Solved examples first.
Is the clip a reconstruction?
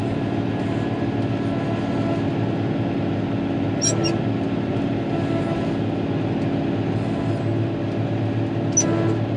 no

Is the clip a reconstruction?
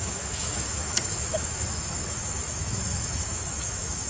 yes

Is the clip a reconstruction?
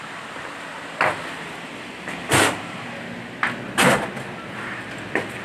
no